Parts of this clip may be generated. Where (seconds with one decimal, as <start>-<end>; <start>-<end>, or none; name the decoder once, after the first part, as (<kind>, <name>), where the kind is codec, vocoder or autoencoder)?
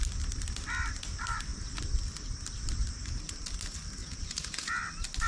4.0-4.8 (vocoder, Vocos)